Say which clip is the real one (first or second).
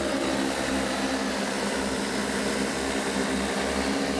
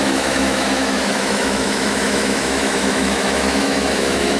first